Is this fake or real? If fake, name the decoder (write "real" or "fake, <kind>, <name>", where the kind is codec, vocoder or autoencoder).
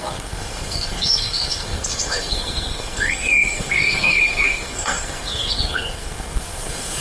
fake, codec, SNAC